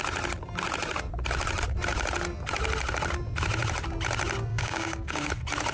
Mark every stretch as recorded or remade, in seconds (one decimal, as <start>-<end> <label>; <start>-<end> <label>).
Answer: 0.0-4.5 recorded; 4.5-5.3 remade; 5.3-5.7 recorded